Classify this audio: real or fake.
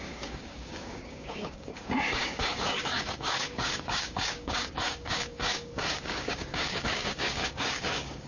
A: fake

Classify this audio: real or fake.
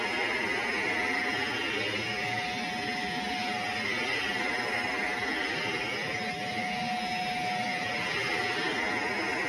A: real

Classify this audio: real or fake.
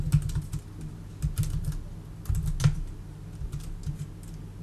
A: real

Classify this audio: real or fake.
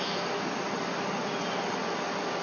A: real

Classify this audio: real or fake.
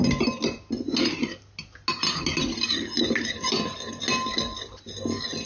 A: real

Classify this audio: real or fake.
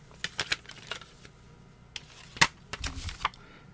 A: real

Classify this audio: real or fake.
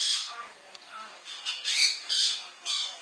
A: fake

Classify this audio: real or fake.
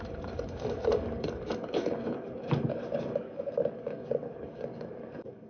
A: fake